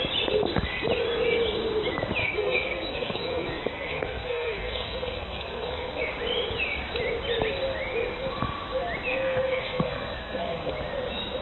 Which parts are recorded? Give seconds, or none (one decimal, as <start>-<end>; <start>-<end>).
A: 0.0-2.2; 6.0-9.1; 10.7-11.4